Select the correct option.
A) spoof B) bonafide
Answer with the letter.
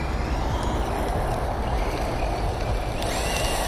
B